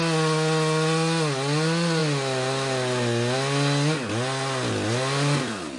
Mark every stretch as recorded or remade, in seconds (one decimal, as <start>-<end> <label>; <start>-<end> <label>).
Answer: 0.0-5.8 recorded